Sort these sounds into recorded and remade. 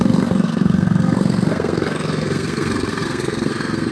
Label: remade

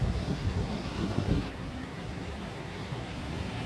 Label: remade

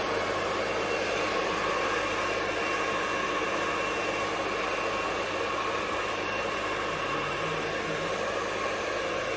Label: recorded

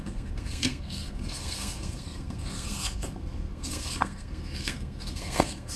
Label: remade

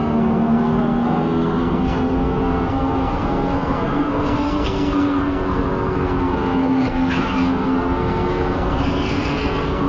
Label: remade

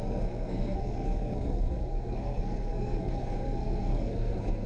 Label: remade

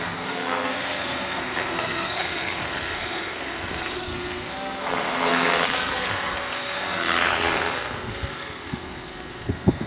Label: remade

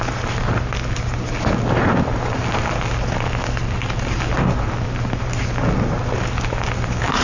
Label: recorded